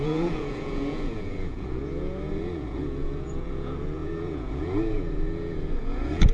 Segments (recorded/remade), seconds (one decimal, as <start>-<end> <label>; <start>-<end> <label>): 0.0-6.3 remade